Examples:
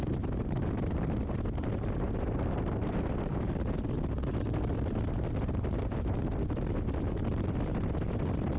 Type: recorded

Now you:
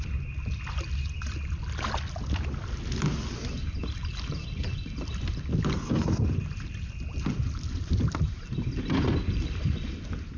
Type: recorded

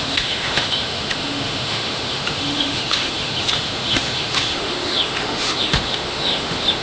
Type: remade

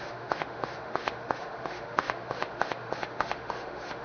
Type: remade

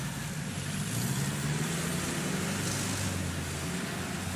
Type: recorded